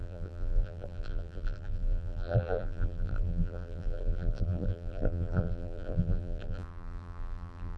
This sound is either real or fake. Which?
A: fake